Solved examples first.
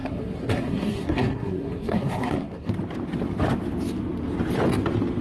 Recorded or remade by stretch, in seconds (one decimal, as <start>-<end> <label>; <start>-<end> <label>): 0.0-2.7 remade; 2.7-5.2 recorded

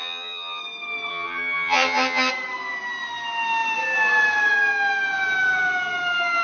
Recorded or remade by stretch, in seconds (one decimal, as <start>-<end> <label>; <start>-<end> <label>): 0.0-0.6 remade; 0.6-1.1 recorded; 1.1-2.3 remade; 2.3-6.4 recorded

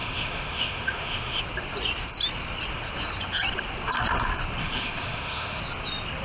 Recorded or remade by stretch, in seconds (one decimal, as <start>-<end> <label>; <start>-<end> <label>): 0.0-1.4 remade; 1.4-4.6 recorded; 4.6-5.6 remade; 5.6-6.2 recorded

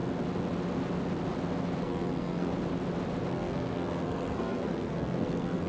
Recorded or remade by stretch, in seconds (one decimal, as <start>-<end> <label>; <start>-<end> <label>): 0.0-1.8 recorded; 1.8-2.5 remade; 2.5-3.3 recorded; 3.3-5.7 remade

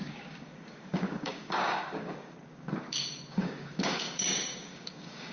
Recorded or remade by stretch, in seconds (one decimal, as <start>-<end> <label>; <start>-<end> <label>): 0.0-5.3 remade

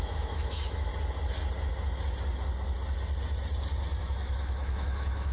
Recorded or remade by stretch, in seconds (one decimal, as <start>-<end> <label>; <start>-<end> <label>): 0.0-0.9 remade; 0.9-4.0 recorded; 4.0-5.3 remade

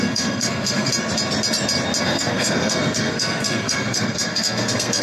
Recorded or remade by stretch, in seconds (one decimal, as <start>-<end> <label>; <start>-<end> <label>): 0.0-0.9 remade; 0.9-2.0 recorded; 2.0-5.0 remade

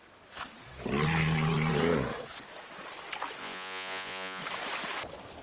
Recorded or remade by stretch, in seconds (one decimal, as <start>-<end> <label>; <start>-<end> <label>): 0.0-3.4 recorded; 3.4-4.4 remade; 4.4-5.4 recorded